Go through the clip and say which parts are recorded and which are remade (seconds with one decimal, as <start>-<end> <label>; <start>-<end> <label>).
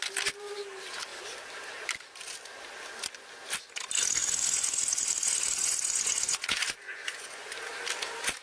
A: 0.0-4.2 recorded; 4.2-7.5 remade; 7.5-8.4 recorded